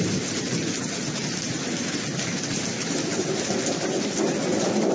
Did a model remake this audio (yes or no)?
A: no